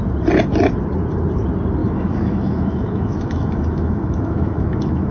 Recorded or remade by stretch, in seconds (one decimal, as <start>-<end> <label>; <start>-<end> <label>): 0.0-1.8 recorded; 1.8-5.1 remade